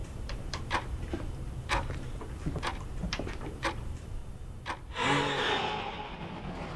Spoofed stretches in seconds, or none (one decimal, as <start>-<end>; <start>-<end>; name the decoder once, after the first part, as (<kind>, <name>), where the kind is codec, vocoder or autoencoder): 0.0-4.2 (vocoder, BigVGAN v2)